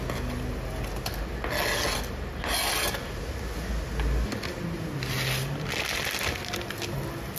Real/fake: real